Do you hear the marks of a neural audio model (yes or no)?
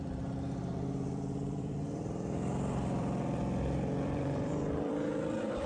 yes